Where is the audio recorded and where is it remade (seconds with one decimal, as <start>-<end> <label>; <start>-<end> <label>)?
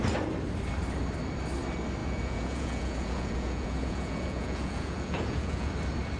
0.0-2.0 recorded; 2.0-5.7 remade; 5.7-6.2 recorded